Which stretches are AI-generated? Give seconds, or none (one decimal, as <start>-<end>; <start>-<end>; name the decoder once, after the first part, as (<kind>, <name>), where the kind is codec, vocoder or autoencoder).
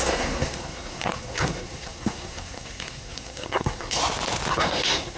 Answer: 0.0-4.0 (codec, SNAC); 4.5-5.2